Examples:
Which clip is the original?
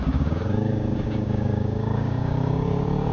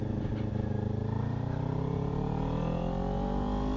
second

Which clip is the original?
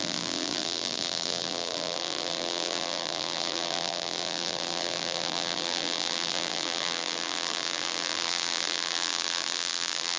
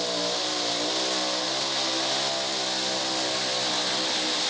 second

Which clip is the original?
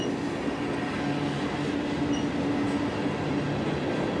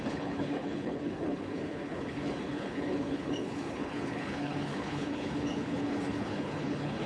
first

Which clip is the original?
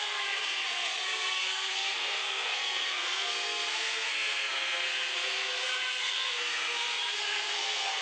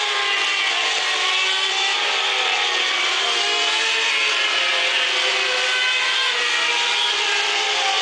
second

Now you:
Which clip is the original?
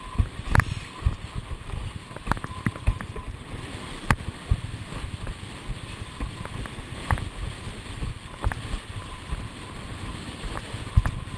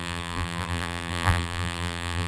first